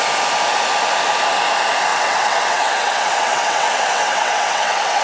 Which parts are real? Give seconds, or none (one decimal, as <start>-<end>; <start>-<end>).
0.0-1.9